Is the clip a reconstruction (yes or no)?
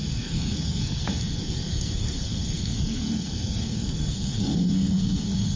yes